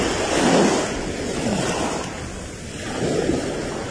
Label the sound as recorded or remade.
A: recorded